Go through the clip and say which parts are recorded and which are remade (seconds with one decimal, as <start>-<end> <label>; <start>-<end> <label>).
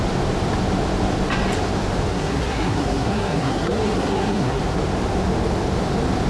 0.0-2.1 recorded; 2.1-4.6 remade; 4.6-6.3 recorded